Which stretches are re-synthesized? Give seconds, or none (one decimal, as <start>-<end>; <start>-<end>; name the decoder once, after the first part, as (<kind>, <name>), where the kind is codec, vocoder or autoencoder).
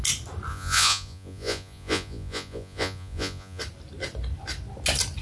0.5-3.6 (vocoder, Vocos)